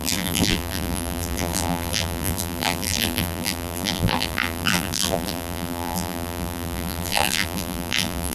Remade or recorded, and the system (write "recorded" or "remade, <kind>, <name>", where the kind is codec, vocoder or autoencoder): remade, vocoder, BigVGAN v2